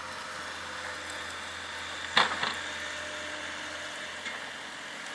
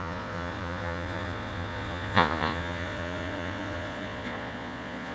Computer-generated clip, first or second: second